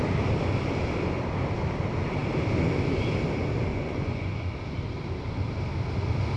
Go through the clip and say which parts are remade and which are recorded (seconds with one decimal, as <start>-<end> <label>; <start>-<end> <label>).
0.0-3.7 recorded; 3.7-4.3 remade; 4.3-6.4 recorded